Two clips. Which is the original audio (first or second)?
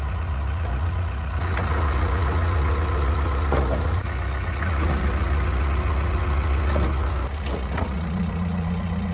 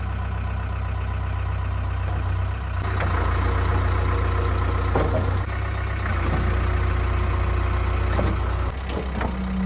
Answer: second